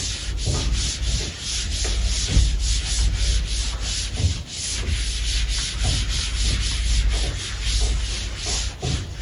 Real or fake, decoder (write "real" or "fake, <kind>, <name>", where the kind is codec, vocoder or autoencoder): real